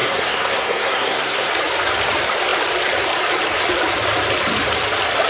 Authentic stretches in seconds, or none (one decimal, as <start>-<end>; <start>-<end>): 1.5-5.3